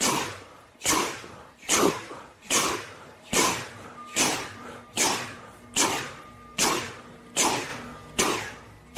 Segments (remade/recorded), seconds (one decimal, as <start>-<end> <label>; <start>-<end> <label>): 0.0-7.7 remade; 7.7-8.2 recorded; 8.2-9.0 remade